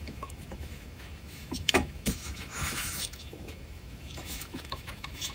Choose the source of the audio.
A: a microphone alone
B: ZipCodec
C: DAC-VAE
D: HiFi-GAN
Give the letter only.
C